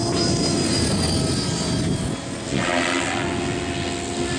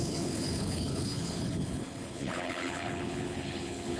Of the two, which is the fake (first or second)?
second